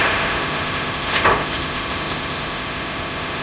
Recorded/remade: remade